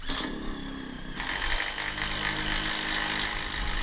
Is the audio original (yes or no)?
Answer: yes